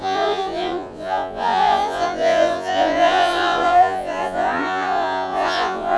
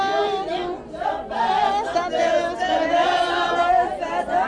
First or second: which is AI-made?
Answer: first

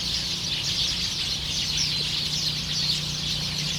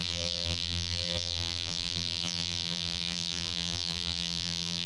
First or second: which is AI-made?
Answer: second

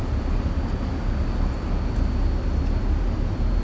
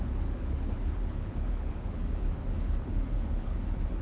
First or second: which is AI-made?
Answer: second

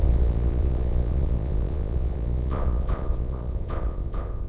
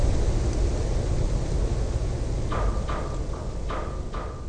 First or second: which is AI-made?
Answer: first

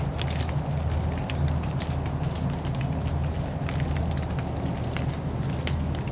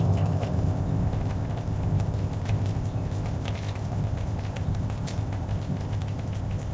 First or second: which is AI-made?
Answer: second